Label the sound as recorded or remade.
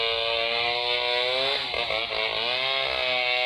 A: recorded